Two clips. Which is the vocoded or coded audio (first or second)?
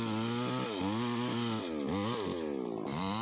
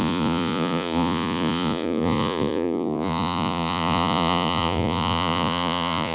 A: second